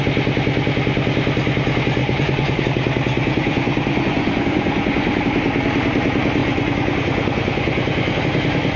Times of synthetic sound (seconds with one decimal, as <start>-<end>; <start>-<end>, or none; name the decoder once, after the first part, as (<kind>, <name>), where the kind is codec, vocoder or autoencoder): 2.0-2.6 (vocoder, Vocos); 3.1-5.2; 6.4-8.2